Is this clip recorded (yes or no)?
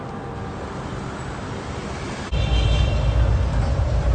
no